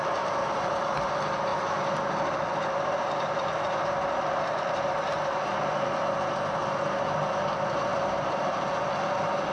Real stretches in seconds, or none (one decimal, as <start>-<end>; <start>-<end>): 0.0-0.4; 1.1-7.9; 8.6-9.5